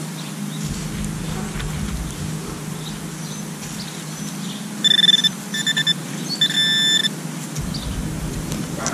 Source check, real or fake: real